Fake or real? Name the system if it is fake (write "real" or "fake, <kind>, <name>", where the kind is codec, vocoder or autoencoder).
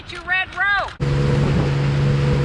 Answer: real